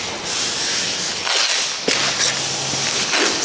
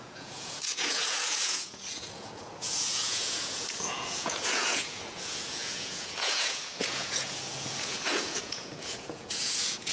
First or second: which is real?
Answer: first